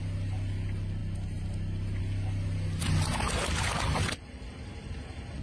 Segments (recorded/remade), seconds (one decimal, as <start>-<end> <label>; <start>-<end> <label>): 0.0-5.4 recorded